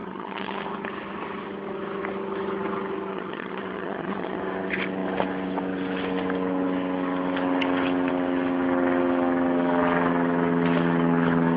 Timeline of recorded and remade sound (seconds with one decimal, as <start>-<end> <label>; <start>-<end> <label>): 0.0-0.6 remade; 0.6-3.1 recorded; 3.1-4.4 remade; 4.4-11.6 recorded

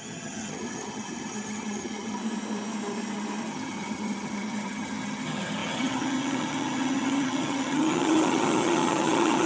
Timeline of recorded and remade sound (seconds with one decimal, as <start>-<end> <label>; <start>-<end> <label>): 0.0-2.2 remade; 2.2-3.5 recorded; 3.5-9.5 remade

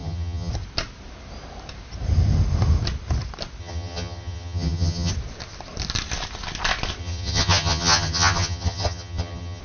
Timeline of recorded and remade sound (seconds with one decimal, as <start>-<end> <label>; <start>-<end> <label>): 0.0-0.5 remade; 0.5-3.6 recorded; 3.6-5.1 remade; 5.1-7.0 recorded; 7.0-9.6 remade